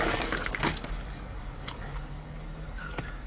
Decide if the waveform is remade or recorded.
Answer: remade